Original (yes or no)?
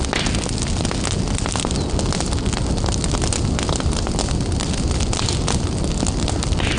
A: yes